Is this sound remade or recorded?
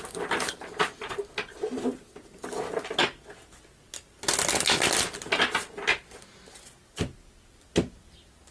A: recorded